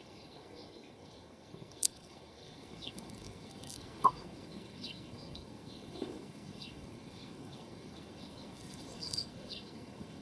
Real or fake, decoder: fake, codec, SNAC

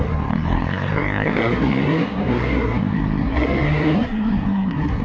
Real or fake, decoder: fake, codec, SNAC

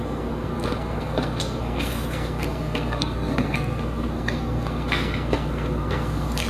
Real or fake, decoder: fake, codec, SNAC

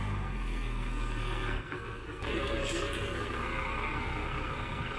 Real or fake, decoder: fake, codec, SNAC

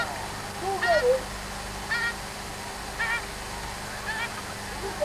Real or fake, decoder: real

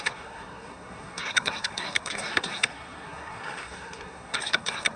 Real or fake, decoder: fake, codec, SNAC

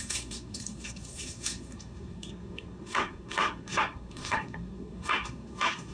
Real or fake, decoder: fake, codec, SNAC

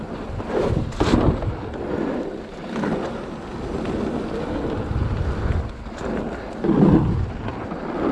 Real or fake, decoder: real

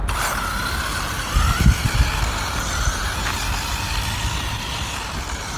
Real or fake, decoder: real